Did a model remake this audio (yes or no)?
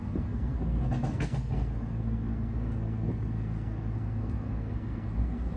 yes